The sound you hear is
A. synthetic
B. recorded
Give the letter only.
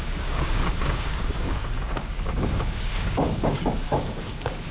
A